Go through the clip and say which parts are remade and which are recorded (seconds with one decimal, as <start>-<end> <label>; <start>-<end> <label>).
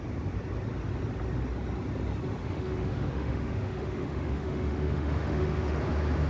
0.0-2.4 recorded; 2.4-5.8 remade; 5.8-6.3 recorded